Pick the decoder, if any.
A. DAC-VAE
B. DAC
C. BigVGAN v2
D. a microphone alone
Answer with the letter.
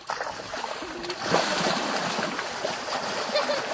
D